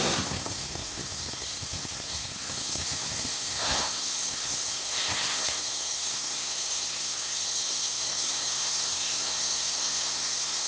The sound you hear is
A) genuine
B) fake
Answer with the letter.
B